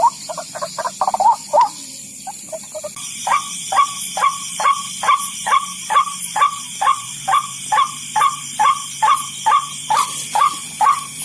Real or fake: fake